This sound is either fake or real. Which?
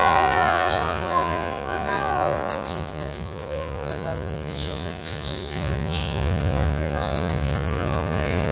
fake